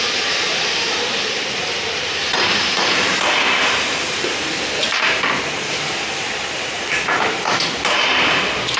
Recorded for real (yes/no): no